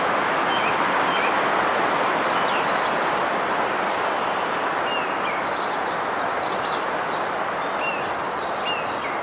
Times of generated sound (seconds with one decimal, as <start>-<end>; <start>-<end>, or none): none